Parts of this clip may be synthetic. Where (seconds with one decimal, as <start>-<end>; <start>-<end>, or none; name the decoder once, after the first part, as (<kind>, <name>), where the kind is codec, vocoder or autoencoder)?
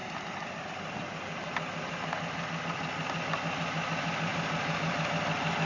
none